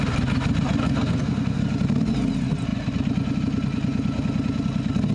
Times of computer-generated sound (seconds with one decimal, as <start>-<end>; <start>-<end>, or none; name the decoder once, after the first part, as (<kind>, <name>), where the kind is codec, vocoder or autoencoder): 0.8-1.6 (codec, SNAC)